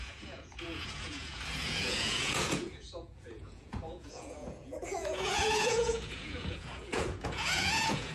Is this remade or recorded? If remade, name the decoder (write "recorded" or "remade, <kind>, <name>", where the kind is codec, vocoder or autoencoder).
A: remade, vocoder, Vocos